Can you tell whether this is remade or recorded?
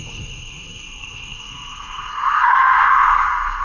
remade